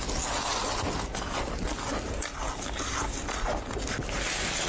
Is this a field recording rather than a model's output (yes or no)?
yes